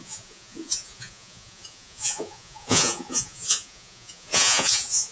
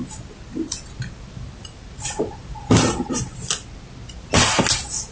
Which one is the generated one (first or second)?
first